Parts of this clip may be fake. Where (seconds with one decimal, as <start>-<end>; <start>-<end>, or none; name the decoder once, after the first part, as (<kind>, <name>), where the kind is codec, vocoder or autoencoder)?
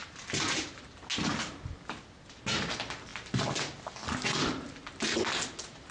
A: none